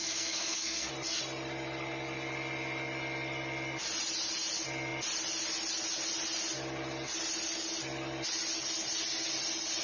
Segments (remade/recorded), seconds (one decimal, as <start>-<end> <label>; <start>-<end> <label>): 0.0-0.9 remade; 0.9-9.8 recorded